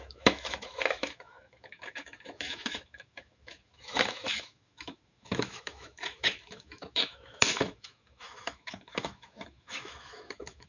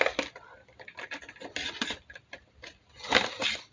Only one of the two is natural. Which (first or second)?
second